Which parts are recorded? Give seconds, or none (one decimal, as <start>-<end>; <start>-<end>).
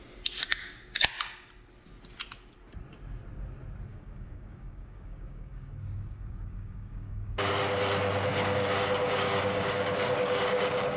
0.0-0.5; 1.1-3.9; 7.5-8.3